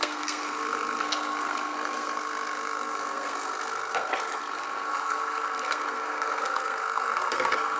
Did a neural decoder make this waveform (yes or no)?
yes